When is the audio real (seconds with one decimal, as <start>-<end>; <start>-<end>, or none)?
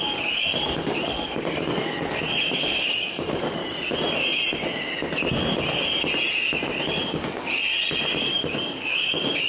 3.6-8.2